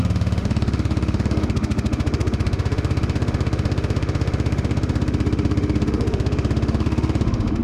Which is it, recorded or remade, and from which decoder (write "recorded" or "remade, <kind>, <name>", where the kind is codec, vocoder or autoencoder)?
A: remade, autoencoder, DAC-VAE